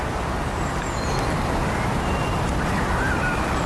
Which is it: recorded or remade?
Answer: recorded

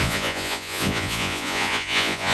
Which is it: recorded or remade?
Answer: remade